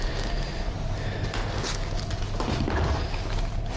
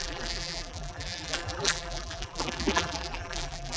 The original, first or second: first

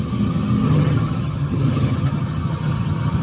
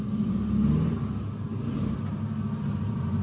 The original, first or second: second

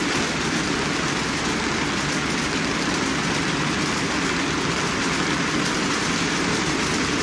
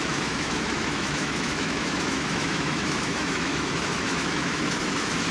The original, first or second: first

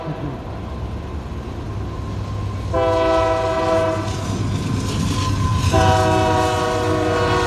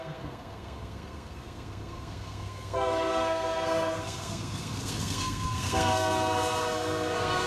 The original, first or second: first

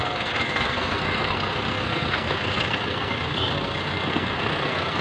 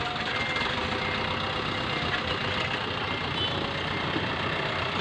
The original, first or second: second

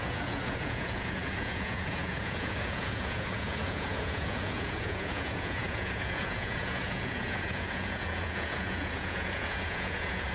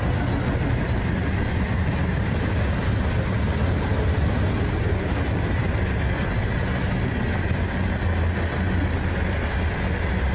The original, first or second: second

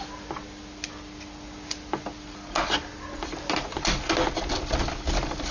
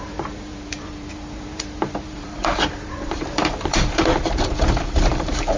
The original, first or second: first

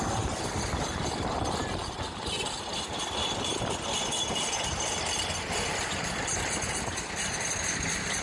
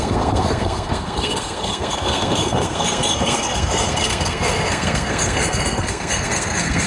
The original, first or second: first